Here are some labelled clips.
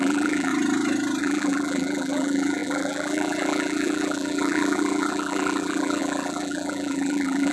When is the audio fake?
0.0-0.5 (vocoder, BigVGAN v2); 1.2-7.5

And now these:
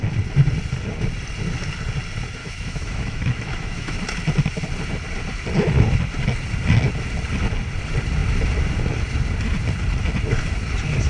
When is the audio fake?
2.4-4.0 (autoencoder, DAC-VAE)

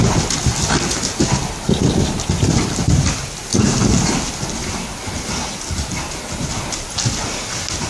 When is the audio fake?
none

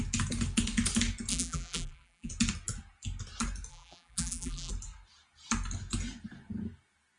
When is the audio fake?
1.3-2.3 (vocoder, BigVGAN v2); 3.7-4.7

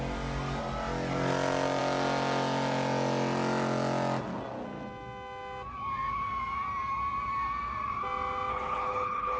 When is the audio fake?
8.5-9.4 (codec, HILCodec)